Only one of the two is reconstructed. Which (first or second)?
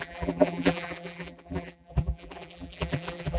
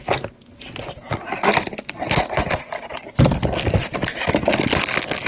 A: first